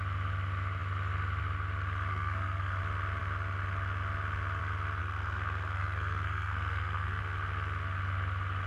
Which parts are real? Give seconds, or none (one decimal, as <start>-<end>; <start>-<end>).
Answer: 0.0-2.1; 2.8-5.0; 7.2-8.7